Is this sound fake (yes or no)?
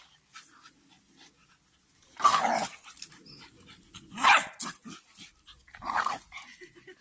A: no